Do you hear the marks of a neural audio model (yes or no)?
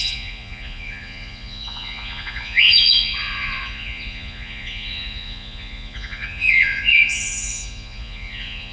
yes